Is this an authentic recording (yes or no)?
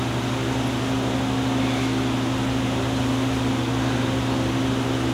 yes